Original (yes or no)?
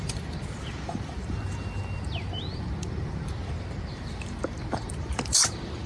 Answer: no